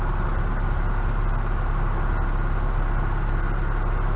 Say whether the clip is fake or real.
real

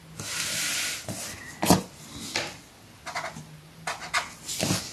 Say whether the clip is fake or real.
real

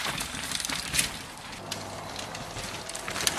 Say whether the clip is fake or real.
real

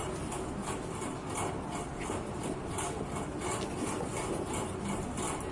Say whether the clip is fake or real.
real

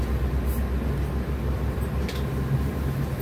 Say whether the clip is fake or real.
real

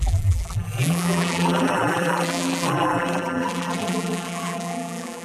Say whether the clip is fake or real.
fake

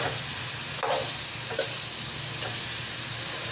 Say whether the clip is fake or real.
real